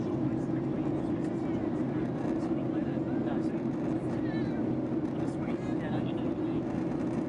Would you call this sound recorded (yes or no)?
yes